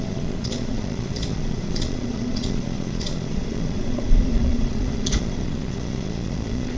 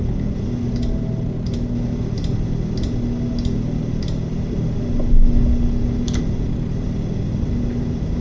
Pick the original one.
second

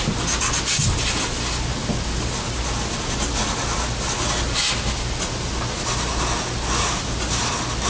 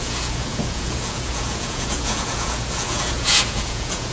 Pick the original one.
first